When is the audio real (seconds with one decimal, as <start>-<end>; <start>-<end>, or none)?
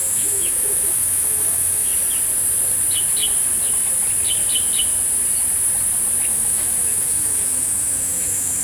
1.9-6.3